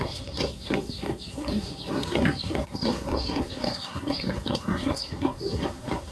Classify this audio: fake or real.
fake